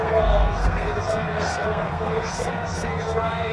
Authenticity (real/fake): fake